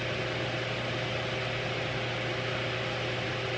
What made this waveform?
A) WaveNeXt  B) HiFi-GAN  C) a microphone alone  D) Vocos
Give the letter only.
C